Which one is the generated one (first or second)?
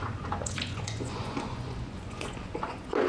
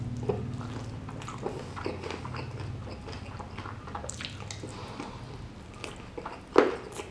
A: first